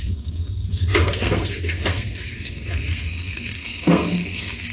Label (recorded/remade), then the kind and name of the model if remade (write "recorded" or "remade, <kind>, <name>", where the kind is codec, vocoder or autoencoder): remade, codec, SNAC